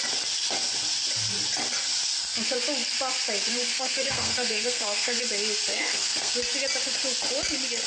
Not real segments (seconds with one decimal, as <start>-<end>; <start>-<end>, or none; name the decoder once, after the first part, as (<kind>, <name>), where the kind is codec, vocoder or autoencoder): 3.7-5.2 (codec, SNAC); 5.7-6.3